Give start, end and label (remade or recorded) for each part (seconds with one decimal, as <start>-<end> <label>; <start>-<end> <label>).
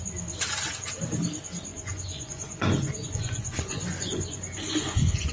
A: 0.0-1.7 recorded; 1.7-5.3 remade